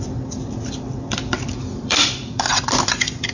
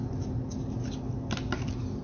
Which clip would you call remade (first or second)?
first